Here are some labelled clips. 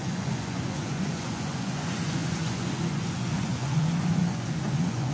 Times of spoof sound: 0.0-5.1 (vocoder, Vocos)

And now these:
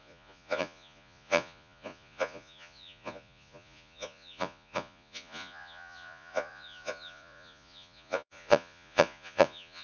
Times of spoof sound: 0.0-9.8 (vocoder, Vocos)

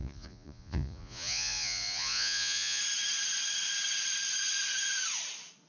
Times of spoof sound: 0.0-2.8 (vocoder, Vocos)